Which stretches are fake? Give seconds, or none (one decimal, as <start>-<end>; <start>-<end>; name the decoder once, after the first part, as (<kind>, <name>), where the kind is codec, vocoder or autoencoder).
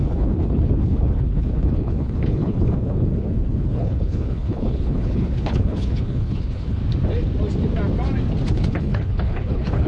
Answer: 0.0-6.8 (codec, HILCodec); 8.5-9.9